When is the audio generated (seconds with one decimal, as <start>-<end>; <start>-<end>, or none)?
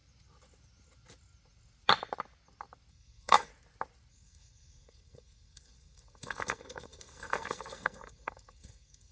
2.9-3.5; 4.1-9.1